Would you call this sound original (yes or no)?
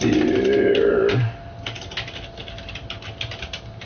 yes